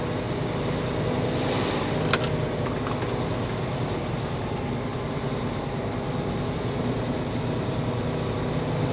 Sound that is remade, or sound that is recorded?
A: recorded